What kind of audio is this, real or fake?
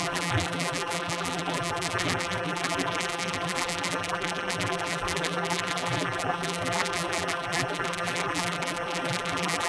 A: fake